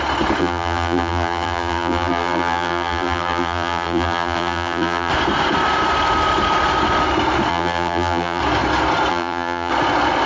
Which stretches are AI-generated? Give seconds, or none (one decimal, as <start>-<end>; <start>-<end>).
0.4-5.1; 7.5-8.4; 9.1-9.7